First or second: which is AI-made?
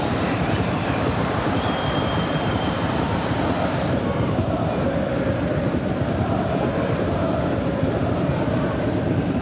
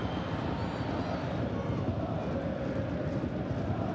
first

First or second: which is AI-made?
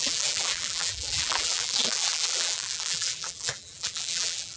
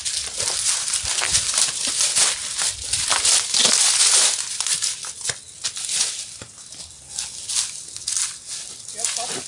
first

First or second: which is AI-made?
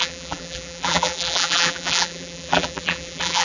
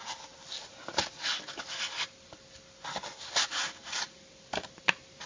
first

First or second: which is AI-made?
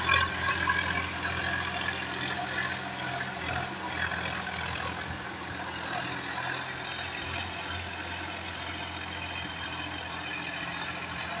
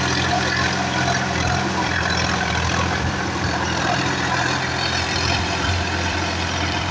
second